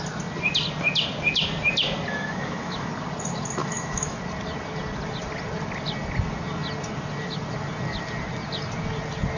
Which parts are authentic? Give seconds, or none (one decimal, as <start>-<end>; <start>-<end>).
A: 0.0-2.1; 2.9-3.6; 4.2-9.4